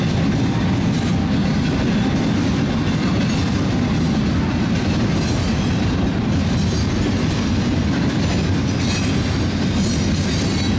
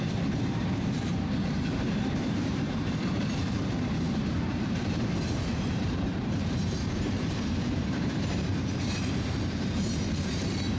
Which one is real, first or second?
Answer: first